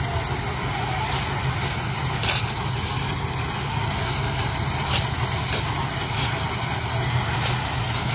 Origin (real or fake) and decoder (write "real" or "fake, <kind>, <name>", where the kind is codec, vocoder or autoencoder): real